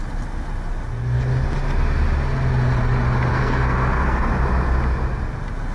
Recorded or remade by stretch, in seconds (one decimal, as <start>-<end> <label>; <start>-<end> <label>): 0.0-3.3 recorded; 3.3-4.3 remade; 4.3-5.7 recorded